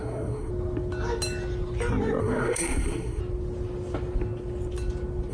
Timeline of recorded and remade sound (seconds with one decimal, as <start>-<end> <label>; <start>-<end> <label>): 0.0-0.5 remade; 0.5-2.2 recorded; 2.2-3.2 remade; 3.2-5.3 recorded